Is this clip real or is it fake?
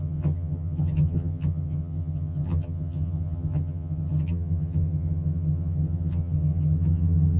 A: fake